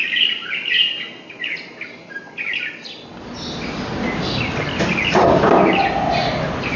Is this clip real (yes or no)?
yes